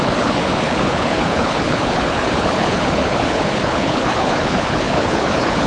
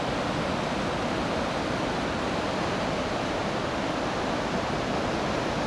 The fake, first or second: first